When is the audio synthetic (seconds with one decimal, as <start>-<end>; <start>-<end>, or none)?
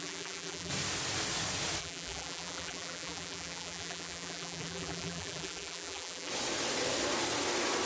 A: 0.0-0.7; 1.8-6.3